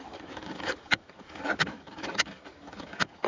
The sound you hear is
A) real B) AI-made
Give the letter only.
B